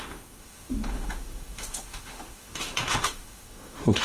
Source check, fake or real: fake